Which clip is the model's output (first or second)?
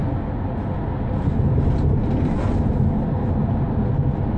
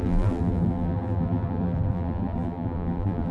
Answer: second